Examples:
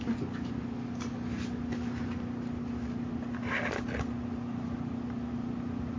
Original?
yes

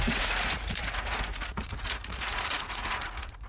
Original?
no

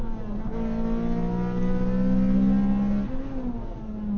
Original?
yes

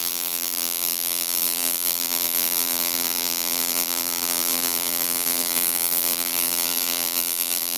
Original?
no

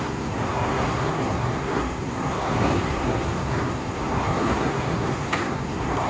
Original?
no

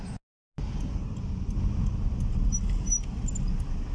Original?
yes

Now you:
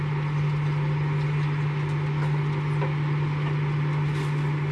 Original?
yes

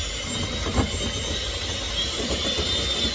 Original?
yes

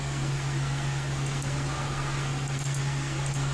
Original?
no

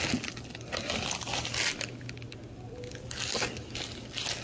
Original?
yes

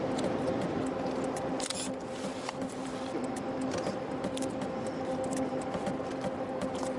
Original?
yes